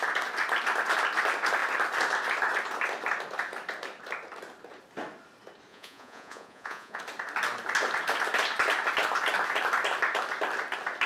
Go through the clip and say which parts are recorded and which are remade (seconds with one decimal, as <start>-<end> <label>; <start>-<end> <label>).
0.0-5.7 recorded; 5.7-7.0 remade; 7.0-11.1 recorded